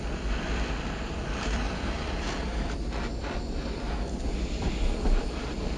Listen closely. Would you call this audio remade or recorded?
remade